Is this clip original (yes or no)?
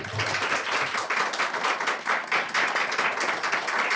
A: yes